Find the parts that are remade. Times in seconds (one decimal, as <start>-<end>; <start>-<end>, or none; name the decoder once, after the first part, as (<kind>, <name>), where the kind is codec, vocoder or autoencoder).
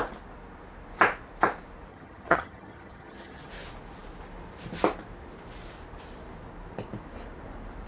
1.9-3.5 (vocoder, HiFi-GAN)